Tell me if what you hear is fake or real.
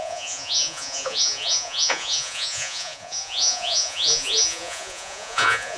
fake